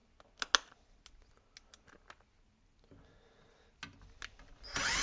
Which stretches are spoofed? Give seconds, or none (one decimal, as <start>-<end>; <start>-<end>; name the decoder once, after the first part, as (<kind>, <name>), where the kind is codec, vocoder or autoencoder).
none